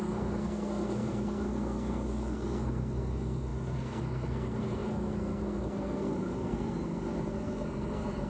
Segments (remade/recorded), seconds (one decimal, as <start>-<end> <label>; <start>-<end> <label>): 0.0-8.3 remade